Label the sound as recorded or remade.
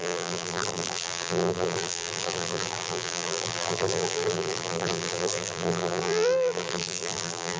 remade